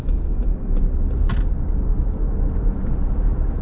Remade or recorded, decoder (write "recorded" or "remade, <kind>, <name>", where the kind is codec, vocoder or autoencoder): recorded